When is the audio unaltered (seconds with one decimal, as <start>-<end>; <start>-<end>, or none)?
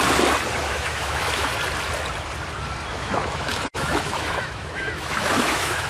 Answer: 0.0-0.6; 1.5-2.9